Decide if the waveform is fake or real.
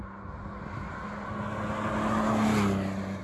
real